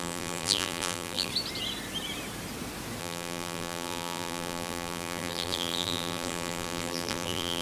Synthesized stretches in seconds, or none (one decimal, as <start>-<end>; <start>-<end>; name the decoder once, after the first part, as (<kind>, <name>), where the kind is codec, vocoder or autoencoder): 0.0-1.3 (vocoder, BigVGAN v2); 3.0-7.6